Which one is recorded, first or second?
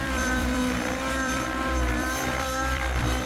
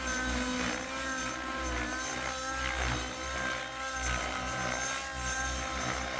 second